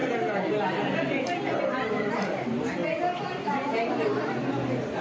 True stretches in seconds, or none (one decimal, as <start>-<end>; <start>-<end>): 0.0-5.0